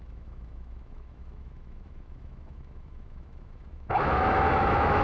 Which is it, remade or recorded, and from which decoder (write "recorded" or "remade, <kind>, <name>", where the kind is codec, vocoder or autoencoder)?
remade, autoencoder, DAC-VAE